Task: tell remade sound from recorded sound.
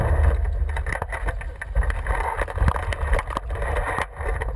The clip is recorded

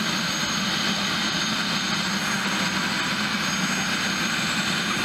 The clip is recorded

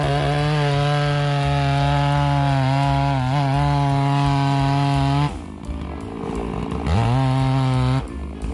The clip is recorded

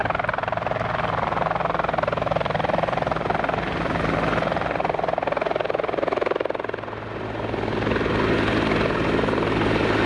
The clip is recorded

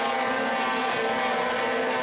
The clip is recorded